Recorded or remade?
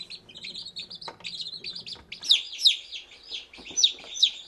recorded